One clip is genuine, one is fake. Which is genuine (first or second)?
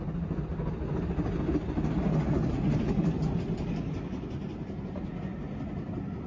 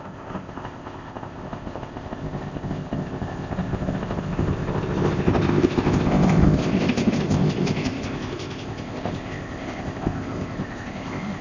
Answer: first